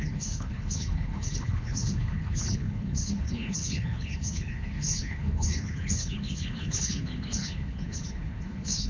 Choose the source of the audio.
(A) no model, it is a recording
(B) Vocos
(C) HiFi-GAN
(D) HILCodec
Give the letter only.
D